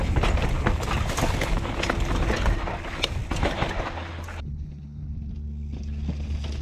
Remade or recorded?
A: recorded